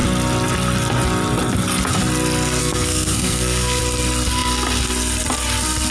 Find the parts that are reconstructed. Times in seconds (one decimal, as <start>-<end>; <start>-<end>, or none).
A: 2.6-3.8